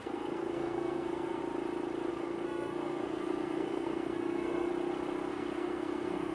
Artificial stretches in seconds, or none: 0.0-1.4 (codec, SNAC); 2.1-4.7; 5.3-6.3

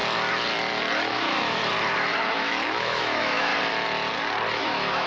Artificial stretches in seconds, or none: 1.1-1.6 (autoencoder, DAC-VAE); 2.3-3.5; 4.6-5.1

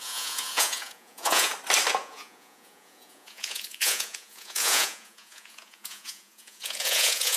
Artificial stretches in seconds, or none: 0.0-1.5 (vocoder, Vocos); 2.0-7.4

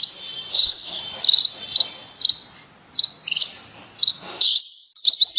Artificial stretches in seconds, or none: 0.5-1.0 (codec, SNAC); 4.1-4.6